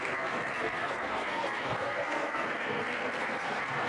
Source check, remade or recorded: remade